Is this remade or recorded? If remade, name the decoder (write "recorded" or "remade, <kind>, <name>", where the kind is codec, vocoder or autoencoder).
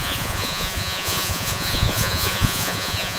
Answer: remade, vocoder, Vocos